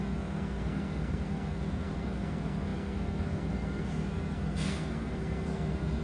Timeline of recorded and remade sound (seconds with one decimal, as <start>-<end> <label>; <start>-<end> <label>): 0.0-6.0 remade